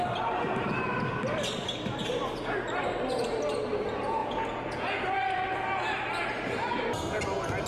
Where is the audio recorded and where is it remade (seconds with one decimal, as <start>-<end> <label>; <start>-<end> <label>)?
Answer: 0.0-4.2 recorded; 4.2-5.0 remade; 5.0-7.7 recorded